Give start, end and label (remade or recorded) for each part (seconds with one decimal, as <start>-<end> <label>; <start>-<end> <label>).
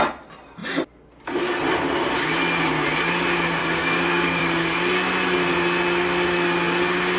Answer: 0.0-3.6 recorded; 3.6-4.4 remade; 4.4-7.2 recorded